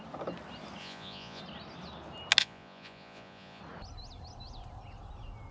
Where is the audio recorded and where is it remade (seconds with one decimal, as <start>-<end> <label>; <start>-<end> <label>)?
0.0-0.8 recorded; 0.8-1.4 remade; 1.4-2.4 recorded; 2.4-3.6 remade; 3.6-5.5 recorded